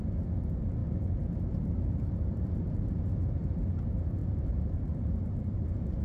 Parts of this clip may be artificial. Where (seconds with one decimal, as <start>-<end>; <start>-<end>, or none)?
0.8-3.8; 4.2-6.0